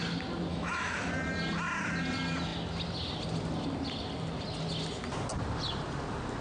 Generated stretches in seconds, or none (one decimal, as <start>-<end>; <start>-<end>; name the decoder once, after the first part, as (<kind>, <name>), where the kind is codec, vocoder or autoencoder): 0.5-1.1 (autoencoder, DAC-VAE)